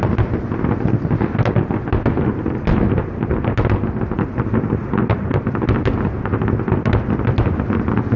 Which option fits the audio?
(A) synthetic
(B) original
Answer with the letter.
B